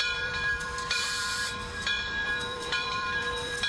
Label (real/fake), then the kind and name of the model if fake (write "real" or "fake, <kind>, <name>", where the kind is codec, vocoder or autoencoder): fake, vocoder, BigVGAN v2